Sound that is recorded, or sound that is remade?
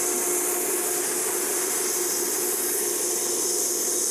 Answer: recorded